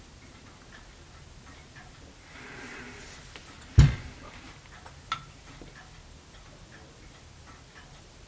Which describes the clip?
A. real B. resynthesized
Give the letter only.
A